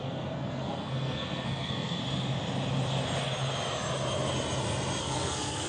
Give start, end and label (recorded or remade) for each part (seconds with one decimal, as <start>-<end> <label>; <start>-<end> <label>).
0.0-2.0 remade; 2.0-5.0 recorded; 5.0-5.7 remade